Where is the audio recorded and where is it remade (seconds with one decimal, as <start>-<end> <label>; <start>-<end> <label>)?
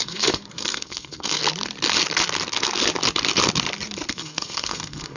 0.0-1.4 remade; 1.4-4.1 recorded; 4.1-5.2 remade